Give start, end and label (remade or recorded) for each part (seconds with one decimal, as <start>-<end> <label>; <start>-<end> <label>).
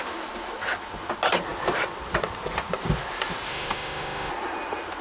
0.0-3.5 recorded; 3.5-4.3 remade; 4.3-5.0 recorded